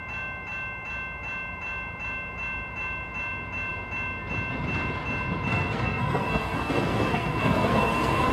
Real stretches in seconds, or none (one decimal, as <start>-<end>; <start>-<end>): 0.0-5.5